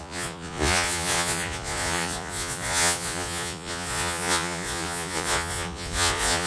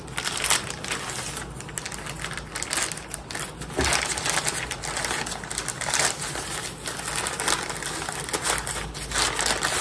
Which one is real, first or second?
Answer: second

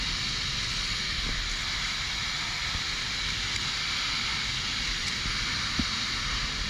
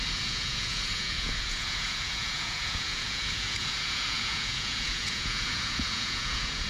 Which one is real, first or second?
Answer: first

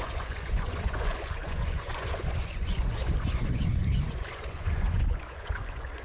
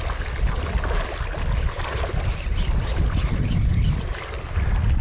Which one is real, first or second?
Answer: second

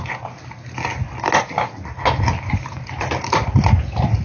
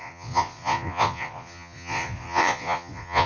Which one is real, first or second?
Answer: first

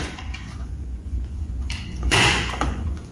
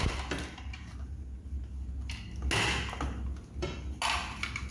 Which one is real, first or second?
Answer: second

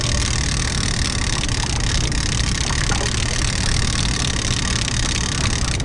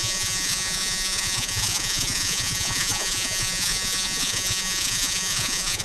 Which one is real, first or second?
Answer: first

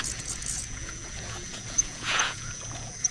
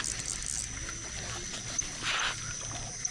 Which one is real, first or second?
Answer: second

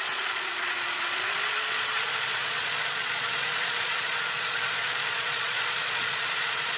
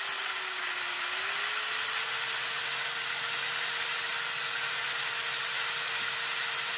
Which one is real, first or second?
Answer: second